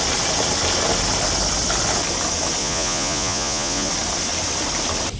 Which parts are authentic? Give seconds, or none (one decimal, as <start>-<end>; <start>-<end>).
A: 0.0-2.6; 3.9-5.2